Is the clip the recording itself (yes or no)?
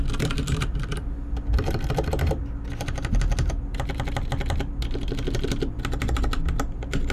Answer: yes